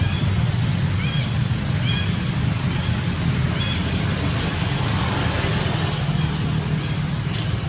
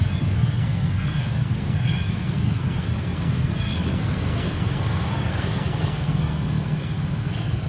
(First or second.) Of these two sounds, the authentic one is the first